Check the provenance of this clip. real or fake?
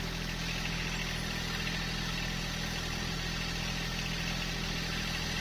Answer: real